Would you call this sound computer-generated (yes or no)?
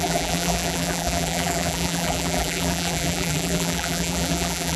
yes